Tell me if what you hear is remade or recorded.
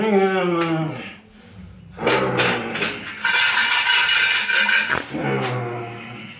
recorded